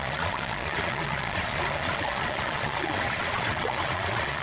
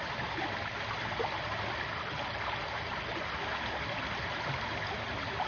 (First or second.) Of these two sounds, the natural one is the second